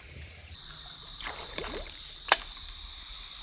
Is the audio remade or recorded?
remade